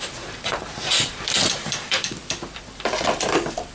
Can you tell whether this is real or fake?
fake